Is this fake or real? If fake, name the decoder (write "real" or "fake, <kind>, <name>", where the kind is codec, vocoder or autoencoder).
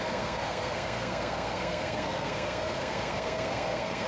fake, codec, SNAC